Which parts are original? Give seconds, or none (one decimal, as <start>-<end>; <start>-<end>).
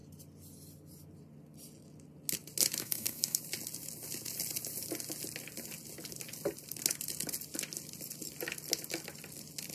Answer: 0.0-2.8; 3.4-9.7